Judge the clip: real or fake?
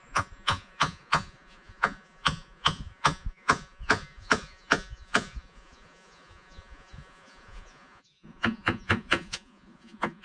fake